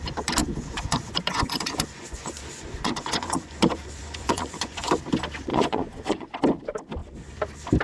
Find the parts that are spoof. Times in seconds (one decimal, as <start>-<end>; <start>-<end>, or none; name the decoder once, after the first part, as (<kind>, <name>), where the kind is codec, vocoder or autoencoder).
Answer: 0.4-4.9 (vocoder, Vocos); 5.5-6.3